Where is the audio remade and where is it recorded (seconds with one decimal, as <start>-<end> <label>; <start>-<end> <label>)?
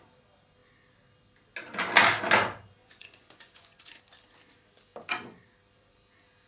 0.0-2.8 recorded; 2.8-4.0 remade; 4.0-6.5 recorded